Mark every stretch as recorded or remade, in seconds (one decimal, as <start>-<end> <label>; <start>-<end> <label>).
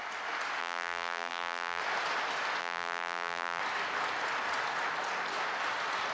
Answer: 0.0-0.6 recorded; 0.6-1.8 remade; 1.8-2.6 recorded; 2.6-3.6 remade; 3.6-6.1 recorded